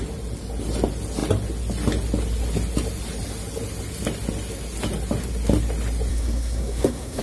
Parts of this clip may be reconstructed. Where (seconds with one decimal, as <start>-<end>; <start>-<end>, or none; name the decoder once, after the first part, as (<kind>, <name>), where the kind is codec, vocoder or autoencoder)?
6.1-7.2 (codec, SNAC)